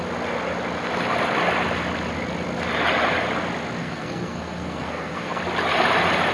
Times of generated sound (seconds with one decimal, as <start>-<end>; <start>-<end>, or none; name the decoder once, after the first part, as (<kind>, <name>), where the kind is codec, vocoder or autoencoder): 3.8-5.4 (codec, SNAC)